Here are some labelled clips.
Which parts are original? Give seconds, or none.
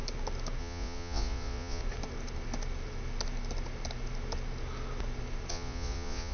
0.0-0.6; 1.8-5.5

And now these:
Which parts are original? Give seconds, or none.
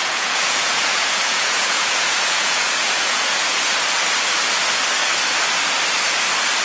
3.7-6.6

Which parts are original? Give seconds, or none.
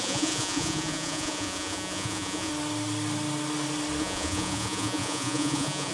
2.5-4.0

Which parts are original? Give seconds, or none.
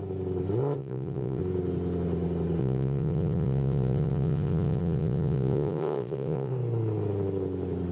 0.0-0.8; 1.4-2.6; 6.5-7.9